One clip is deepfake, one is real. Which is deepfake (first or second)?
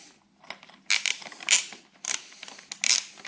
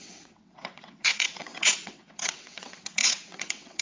second